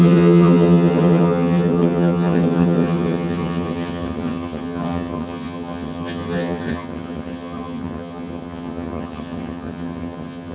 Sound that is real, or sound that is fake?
fake